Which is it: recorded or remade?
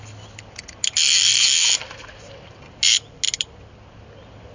recorded